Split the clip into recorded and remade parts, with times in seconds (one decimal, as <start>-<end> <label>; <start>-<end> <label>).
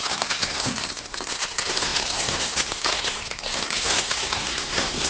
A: 0.0-5.1 remade